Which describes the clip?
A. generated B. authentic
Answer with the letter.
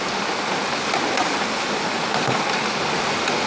B